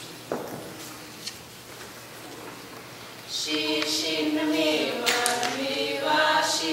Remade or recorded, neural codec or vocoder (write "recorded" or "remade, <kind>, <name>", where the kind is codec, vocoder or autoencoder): recorded